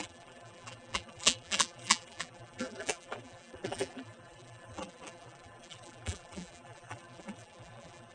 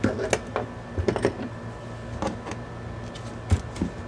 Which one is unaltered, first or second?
second